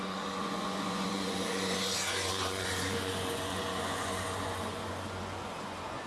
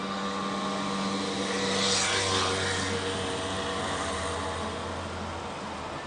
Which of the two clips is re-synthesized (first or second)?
first